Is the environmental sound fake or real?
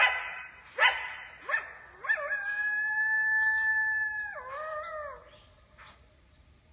real